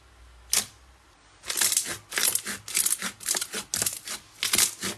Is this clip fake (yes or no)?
no